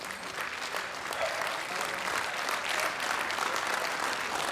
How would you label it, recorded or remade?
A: recorded